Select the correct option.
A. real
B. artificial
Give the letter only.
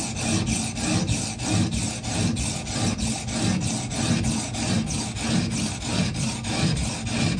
A